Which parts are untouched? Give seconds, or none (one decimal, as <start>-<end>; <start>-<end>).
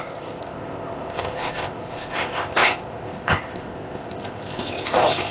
none